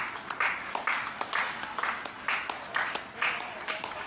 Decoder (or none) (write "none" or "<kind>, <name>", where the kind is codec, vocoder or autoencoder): none